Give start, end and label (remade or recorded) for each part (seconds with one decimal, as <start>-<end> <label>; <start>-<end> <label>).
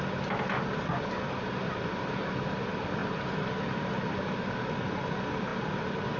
0.0-3.0 recorded; 3.0-3.9 remade; 3.9-6.2 recorded